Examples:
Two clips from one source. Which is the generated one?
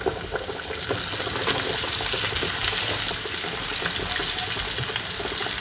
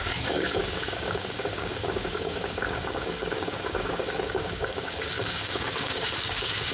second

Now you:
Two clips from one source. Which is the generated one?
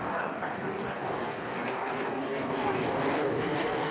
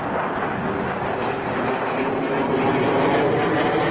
first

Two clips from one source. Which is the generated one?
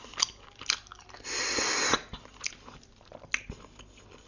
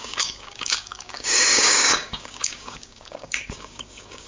second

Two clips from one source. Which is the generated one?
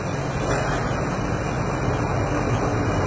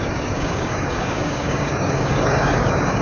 second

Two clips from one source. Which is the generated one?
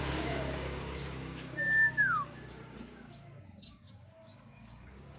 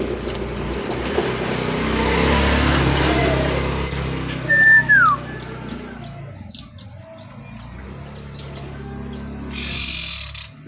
first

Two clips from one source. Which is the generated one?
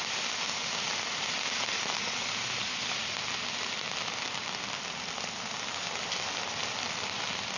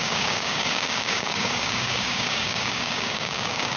second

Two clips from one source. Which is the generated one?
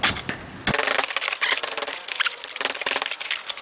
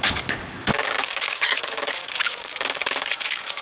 second